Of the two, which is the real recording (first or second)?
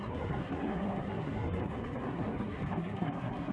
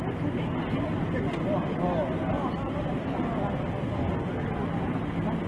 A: second